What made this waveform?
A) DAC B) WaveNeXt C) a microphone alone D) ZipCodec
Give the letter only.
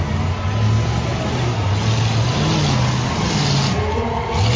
C